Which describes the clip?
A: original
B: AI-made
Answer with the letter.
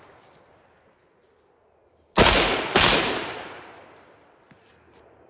A